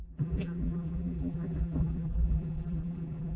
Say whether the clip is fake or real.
fake